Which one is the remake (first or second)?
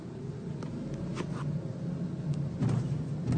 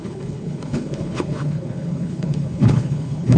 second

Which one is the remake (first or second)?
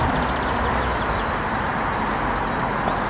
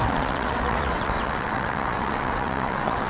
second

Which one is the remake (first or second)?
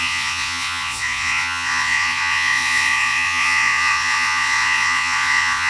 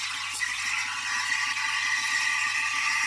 first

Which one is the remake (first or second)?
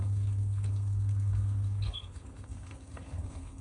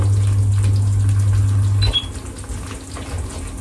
first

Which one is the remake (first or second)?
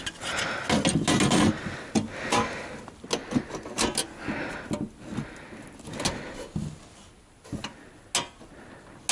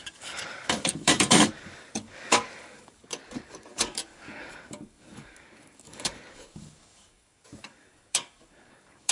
second